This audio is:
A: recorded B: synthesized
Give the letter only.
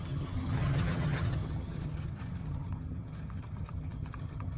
B